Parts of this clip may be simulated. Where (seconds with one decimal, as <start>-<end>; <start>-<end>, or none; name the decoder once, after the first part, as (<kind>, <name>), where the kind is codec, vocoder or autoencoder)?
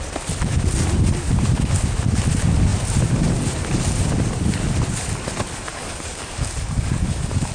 5.7-7.5 (codec, DAC)